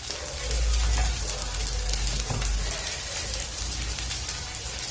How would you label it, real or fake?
real